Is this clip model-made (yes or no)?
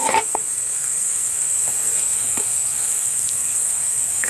yes